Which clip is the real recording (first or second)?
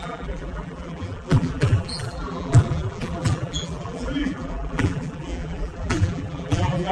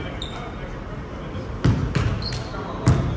second